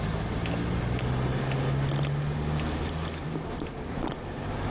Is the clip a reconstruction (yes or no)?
no